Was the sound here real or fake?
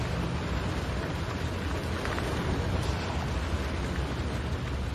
real